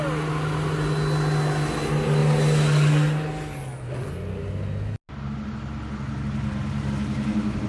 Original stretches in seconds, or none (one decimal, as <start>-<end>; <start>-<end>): 0.0-7.7